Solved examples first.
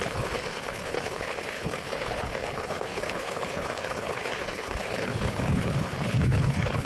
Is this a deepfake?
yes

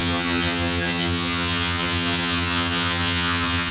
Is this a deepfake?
yes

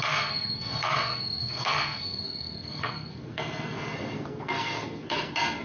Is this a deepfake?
yes